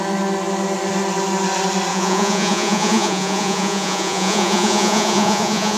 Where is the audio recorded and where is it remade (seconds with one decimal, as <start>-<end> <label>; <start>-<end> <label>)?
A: 0.0-1.9 recorded; 1.9-5.8 remade